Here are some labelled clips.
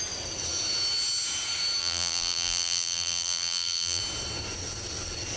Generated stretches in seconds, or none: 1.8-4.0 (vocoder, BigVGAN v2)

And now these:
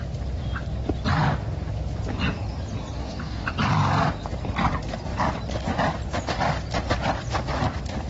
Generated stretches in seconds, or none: 3.0-3.5 (codec, DAC)

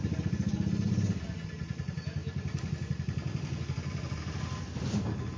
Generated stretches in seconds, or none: none